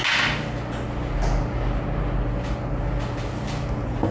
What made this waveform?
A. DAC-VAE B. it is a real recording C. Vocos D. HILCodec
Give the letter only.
B